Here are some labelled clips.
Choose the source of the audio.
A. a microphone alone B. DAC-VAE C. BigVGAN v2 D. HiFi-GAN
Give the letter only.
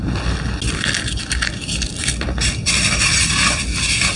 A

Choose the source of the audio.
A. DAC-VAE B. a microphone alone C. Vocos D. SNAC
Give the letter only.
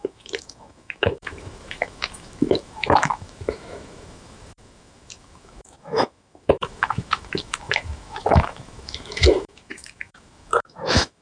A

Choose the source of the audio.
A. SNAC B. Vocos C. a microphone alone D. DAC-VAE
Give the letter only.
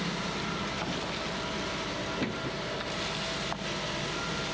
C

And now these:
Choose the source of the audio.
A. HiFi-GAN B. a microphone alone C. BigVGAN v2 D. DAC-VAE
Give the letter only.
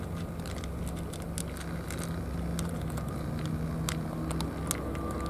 B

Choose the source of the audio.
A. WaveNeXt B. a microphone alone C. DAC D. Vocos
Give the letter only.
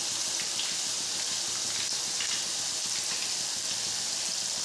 B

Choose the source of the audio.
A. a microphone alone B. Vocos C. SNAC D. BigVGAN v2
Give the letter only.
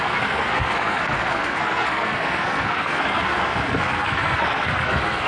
C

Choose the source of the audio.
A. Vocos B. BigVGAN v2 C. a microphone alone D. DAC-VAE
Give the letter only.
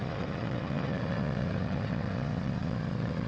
A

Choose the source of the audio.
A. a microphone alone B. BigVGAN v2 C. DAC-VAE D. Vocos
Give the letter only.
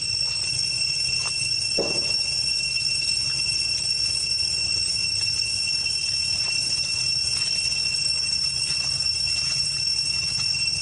A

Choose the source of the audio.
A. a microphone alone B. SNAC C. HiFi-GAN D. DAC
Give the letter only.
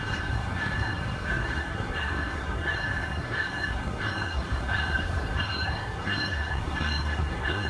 B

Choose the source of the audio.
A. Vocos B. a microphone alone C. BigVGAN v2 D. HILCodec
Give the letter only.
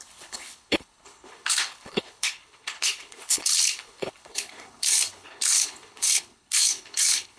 D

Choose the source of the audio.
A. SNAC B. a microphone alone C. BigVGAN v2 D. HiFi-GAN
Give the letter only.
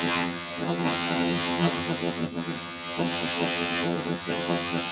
D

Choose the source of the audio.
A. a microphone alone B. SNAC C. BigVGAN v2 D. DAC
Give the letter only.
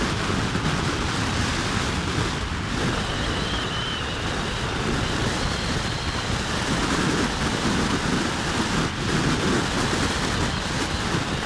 A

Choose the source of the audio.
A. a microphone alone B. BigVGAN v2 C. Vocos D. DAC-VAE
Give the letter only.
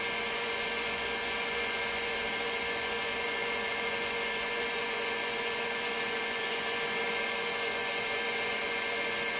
C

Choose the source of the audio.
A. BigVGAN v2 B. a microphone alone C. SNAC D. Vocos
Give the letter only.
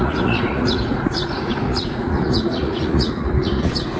D